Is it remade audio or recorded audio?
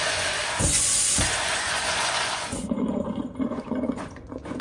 remade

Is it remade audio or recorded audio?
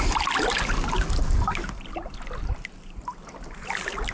recorded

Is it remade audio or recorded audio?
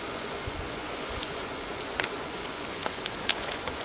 remade